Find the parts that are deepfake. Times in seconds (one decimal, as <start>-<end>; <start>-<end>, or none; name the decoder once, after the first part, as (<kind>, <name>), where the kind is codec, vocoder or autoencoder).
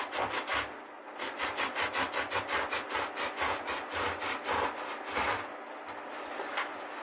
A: none